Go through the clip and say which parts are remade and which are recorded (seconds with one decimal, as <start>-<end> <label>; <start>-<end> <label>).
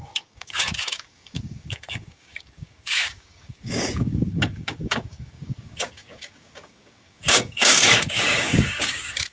0.0-9.3 remade